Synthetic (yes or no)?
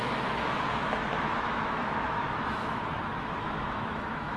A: yes